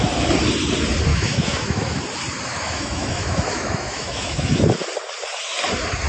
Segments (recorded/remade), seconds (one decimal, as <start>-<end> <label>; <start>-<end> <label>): 0.0-1.1 recorded; 1.1-2.0 remade; 2.0-2.5 recorded; 2.5-4.6 remade; 4.6-6.1 recorded